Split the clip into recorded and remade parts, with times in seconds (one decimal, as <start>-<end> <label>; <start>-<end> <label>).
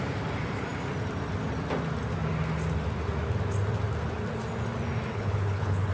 0.0-5.1 recorded; 5.1-5.9 remade